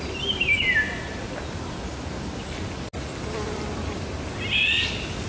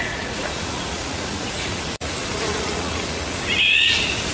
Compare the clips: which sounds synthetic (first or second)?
second